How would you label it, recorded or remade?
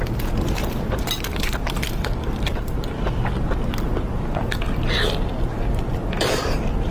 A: recorded